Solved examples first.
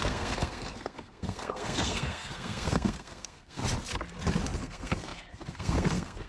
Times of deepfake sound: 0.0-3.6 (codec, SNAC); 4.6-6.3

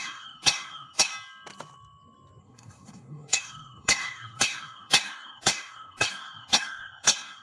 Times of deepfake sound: 0.0-1.1 (codec, SNAC); 2.4-7.4

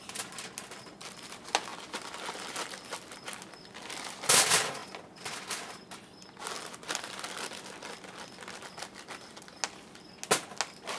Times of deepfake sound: none

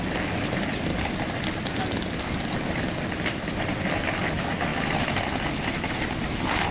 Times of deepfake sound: none

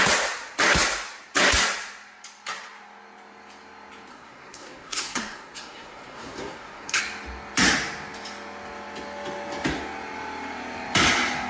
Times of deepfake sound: 4.1-7.0 (codec, SNAC)

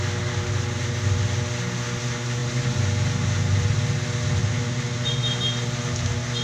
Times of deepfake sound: none

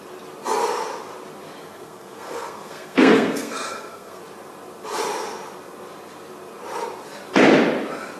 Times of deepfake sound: 1.6-4.2 (codec, SNAC)

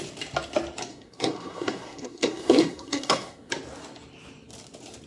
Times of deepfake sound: 0.9-3.5 (codec, SNAC)